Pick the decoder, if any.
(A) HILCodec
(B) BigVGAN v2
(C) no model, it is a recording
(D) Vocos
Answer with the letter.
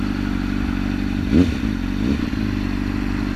C